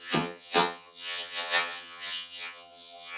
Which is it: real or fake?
fake